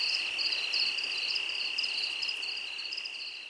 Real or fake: real